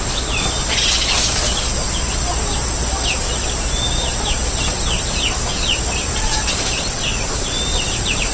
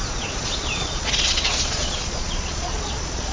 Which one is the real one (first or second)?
first